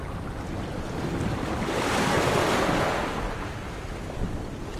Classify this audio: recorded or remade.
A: recorded